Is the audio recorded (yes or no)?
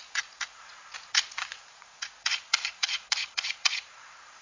no